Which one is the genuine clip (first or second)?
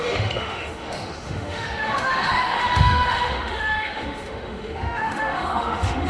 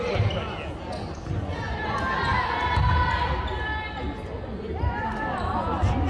second